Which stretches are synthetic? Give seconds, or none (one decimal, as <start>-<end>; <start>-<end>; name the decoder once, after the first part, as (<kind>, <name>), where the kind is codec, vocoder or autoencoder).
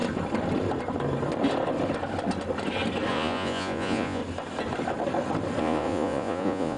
3.1-4.2 (vocoder, Vocos); 5.6-6.8